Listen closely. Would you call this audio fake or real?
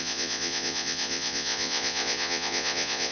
fake